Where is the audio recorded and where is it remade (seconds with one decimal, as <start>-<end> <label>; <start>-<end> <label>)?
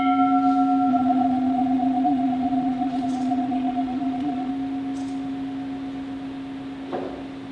0.0-0.9 recorded; 0.9-4.5 remade; 4.5-7.5 recorded